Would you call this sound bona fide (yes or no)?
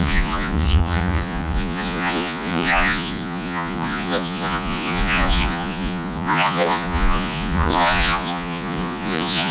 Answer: no